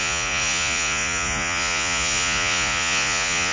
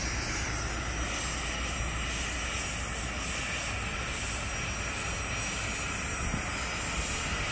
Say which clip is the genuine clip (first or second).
second